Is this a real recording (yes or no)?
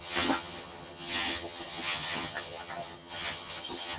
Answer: no